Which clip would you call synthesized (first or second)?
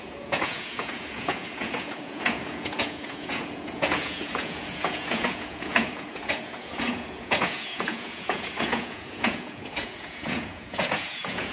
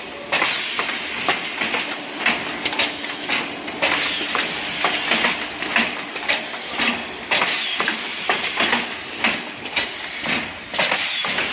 first